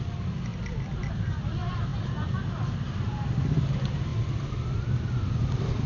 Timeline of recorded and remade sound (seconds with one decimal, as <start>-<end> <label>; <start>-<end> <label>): 0.0-0.5 recorded; 0.5-1.1 remade; 1.1-5.9 recorded